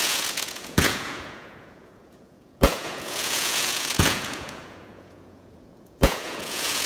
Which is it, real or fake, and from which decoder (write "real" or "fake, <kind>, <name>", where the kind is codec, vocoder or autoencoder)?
fake, vocoder, Vocos